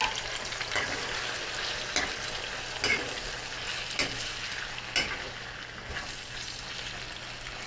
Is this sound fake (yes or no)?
no